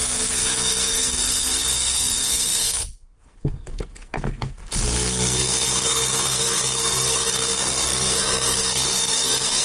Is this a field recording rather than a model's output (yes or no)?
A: no